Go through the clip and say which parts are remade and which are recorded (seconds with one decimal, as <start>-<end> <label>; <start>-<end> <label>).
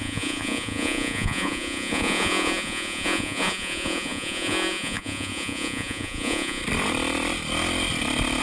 0.0-6.6 remade; 6.6-8.4 recorded